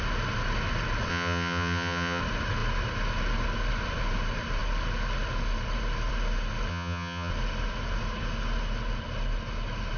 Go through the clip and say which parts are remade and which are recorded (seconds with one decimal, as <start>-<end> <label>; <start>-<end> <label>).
0.0-1.1 recorded; 1.1-2.2 remade; 2.2-6.7 recorded; 6.7-7.3 remade; 7.3-10.0 recorded